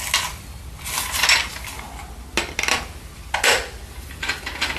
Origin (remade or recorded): recorded